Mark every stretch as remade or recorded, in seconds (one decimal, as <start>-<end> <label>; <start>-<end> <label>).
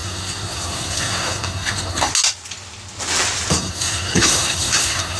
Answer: 0.0-2.1 remade; 2.1-3.5 recorded; 3.5-5.2 remade